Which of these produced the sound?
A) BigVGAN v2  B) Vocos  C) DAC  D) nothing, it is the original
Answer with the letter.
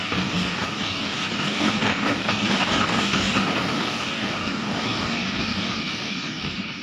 C